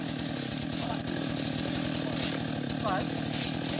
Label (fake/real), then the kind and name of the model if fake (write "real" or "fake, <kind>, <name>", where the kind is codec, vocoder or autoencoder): real